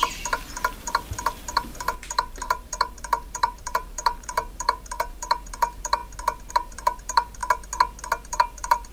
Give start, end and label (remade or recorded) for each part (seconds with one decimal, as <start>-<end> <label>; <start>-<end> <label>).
0.0-6.0 remade; 6.0-6.5 recorded; 6.5-7.4 remade; 7.4-8.3 recorded; 8.3-8.9 remade

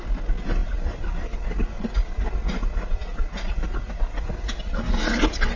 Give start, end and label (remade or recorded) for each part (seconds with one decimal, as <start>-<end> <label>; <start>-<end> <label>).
0.0-5.6 recorded

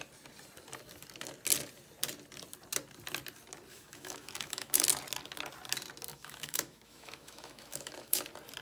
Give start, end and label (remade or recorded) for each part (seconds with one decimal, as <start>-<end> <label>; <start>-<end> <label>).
0.0-3.7 recorded; 3.7-4.8 remade; 4.8-6.1 recorded; 6.1-8.2 remade; 8.2-8.6 recorded

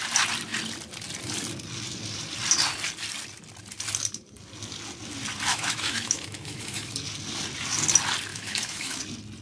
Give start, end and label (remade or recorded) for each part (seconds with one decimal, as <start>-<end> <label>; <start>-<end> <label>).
0.0-5.5 recorded; 5.5-6.9 remade; 6.9-8.3 recorded; 8.3-9.0 remade; 9.0-9.4 recorded